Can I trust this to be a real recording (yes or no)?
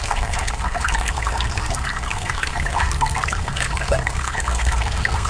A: no